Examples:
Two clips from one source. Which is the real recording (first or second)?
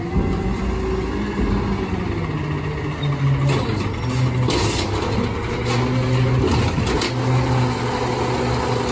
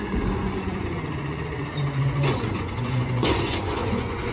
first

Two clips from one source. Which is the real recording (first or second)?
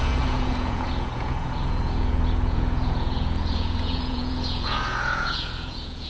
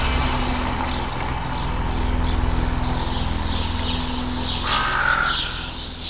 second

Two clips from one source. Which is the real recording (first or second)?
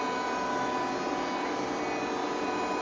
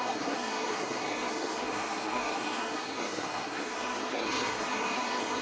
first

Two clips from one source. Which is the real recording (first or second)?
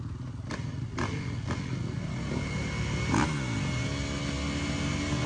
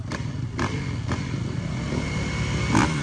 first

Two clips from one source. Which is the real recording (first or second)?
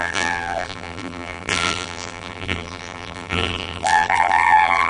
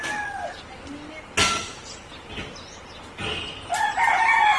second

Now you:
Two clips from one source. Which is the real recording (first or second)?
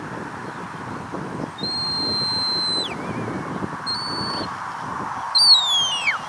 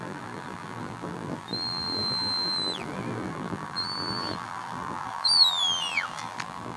first